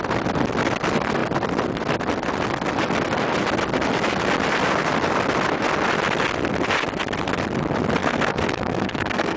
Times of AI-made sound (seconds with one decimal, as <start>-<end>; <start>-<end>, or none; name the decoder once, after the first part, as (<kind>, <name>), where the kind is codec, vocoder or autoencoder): 8.0-9.4 (codec, SNAC)